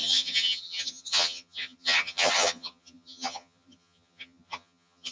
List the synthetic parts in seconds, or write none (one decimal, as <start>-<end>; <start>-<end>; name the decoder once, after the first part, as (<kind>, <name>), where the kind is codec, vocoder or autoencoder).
0.0-5.1 (vocoder, HiFi-GAN)